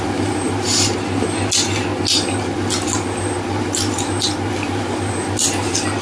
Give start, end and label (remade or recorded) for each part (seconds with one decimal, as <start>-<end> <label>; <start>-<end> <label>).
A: 0.0-6.0 recorded